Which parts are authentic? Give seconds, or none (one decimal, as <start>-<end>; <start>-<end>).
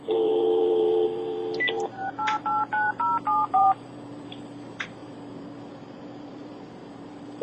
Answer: none